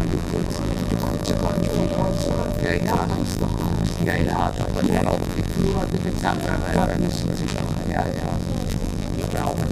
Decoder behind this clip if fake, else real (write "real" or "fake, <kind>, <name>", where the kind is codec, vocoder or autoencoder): fake, vocoder, BigVGAN v2